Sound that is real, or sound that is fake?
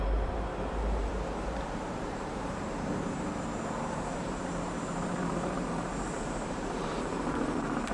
fake